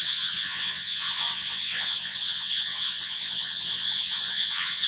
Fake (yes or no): yes